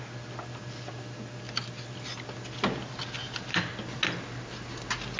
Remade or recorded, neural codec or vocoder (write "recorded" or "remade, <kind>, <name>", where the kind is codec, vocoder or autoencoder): recorded